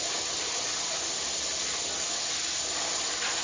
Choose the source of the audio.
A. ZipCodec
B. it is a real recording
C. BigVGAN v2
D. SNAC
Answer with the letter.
C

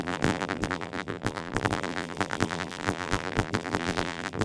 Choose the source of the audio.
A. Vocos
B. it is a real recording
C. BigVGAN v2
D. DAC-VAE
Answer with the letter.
C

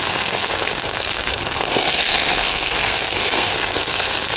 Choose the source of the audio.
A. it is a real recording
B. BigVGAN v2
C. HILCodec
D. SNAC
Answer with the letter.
D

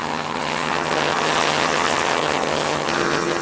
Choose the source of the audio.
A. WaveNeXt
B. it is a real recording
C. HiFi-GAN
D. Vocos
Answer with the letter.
C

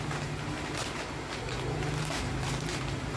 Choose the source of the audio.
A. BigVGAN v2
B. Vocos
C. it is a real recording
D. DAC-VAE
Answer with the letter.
C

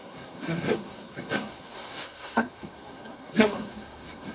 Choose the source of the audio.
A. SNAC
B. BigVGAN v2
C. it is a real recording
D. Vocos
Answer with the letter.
A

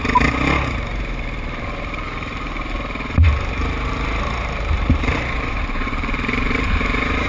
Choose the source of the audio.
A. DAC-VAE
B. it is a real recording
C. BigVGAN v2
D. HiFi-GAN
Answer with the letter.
C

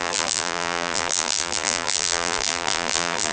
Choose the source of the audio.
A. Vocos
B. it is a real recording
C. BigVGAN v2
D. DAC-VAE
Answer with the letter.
C